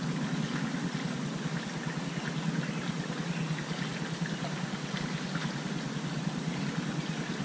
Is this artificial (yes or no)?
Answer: no